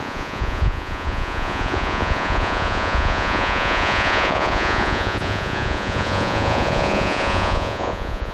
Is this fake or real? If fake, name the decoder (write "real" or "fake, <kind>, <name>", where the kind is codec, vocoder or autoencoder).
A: fake, vocoder, Vocos